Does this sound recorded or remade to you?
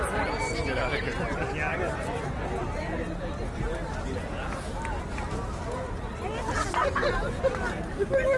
recorded